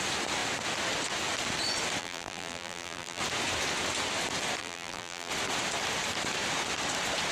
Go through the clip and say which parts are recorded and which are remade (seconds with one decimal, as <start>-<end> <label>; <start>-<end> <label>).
0.0-2.0 recorded; 2.0-3.2 remade; 3.2-4.6 recorded; 4.6-5.3 remade; 5.3-7.3 recorded